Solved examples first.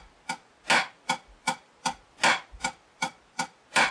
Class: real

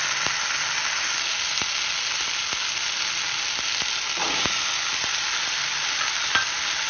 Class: real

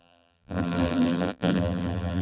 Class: fake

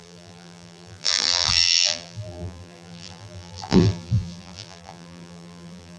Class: fake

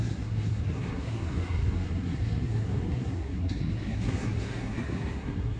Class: fake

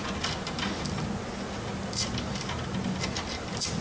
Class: real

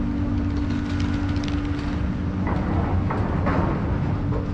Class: real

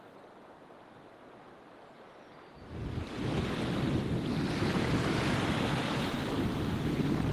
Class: real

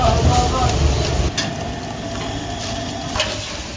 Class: real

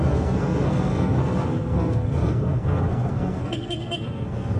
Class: fake